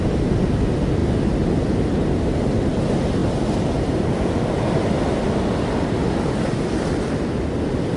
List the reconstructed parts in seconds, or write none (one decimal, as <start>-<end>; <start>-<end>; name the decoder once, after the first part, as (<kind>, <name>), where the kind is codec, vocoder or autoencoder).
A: none